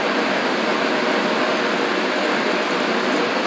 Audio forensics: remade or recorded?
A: recorded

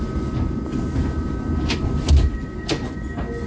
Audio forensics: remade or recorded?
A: recorded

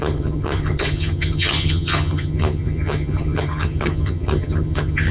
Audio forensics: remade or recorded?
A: remade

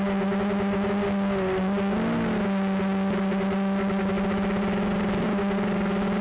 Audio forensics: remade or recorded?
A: recorded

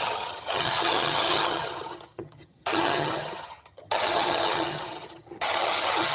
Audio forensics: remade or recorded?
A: remade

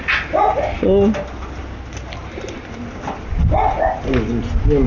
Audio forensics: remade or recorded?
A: recorded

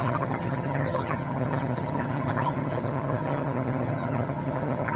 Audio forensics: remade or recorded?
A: remade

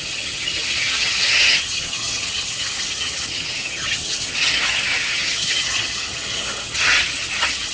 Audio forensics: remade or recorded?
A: remade